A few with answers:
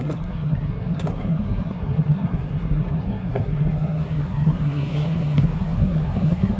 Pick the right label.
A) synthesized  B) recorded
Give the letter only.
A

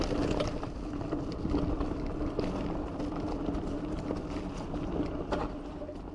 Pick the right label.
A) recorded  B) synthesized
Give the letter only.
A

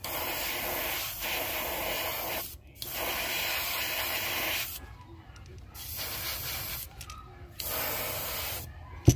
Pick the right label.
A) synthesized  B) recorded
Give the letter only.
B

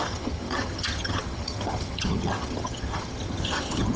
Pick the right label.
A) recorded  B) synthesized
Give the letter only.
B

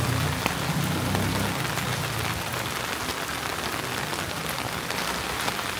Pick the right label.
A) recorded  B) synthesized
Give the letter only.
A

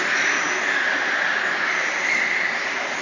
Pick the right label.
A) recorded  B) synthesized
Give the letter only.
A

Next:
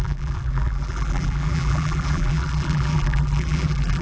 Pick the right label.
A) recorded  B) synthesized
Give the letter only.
B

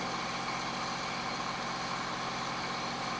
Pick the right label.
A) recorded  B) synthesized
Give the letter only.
A